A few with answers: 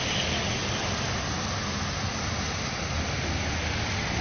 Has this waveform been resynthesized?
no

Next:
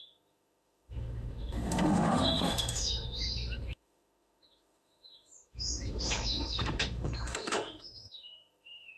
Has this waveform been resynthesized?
yes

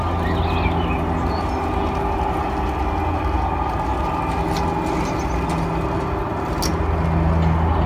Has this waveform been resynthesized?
no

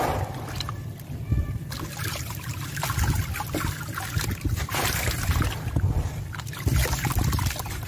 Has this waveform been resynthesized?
yes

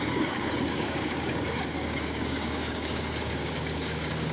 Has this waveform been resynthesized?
yes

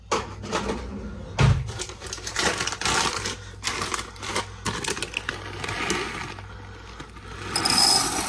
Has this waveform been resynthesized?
no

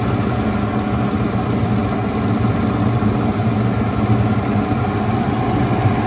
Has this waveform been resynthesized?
no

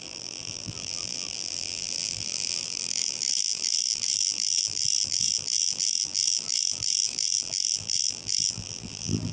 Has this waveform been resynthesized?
yes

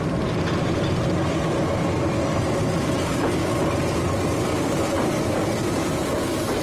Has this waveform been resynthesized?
no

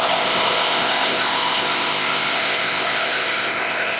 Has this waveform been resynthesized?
yes